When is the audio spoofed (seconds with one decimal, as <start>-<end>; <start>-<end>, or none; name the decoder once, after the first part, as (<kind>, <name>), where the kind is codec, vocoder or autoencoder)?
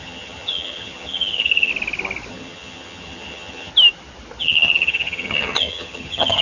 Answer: 0.0-1.7 (vocoder, HiFi-GAN); 2.3-3.7; 4.4-6.4